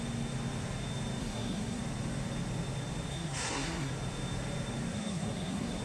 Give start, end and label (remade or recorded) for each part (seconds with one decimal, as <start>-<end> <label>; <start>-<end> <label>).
0.0-1.2 recorded; 1.2-1.8 remade; 1.8-3.1 recorded; 3.1-3.9 remade; 3.9-4.9 recorded; 4.9-5.8 remade